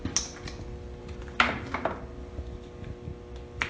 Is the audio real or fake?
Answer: real